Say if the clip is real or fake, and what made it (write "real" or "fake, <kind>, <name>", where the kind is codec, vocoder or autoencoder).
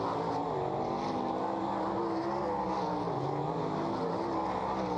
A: real